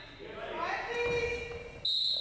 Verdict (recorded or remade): recorded